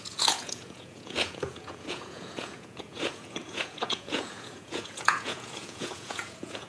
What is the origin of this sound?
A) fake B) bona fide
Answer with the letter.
A